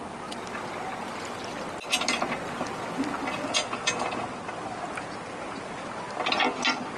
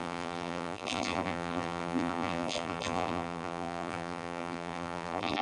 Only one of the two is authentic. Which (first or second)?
first